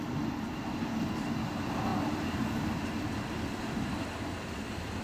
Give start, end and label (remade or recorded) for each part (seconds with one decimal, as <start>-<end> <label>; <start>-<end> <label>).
0.0-5.0 recorded